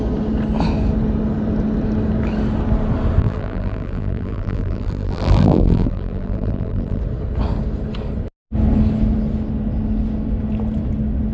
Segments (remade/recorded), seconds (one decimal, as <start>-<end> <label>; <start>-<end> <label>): 0.0-3.2 recorded; 3.2-7.0 remade; 7.0-11.3 recorded